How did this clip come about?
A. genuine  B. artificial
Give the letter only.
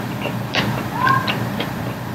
B